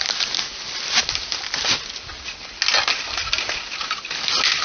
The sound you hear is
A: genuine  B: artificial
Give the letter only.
A